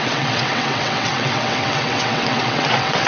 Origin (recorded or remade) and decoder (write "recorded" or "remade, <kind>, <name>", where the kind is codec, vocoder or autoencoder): remade, vocoder, WaveNeXt